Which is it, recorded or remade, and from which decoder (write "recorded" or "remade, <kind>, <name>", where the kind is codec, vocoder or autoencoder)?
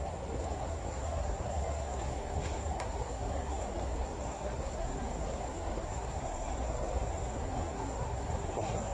remade, codec, SNAC